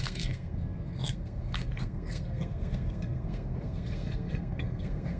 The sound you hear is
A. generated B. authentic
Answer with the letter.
A